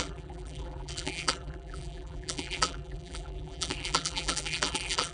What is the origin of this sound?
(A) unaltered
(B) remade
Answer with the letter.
B